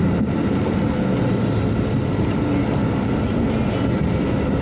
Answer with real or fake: real